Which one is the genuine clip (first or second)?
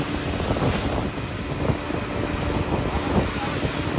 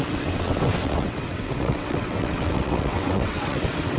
first